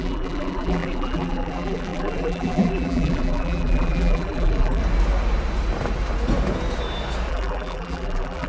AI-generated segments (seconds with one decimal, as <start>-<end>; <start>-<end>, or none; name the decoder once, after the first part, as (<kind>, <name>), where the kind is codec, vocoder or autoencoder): 0.0-4.8 (vocoder, BigVGAN v2); 7.3-8.5